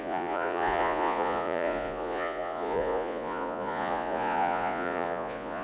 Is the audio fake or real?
fake